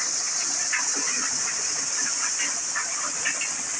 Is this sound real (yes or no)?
yes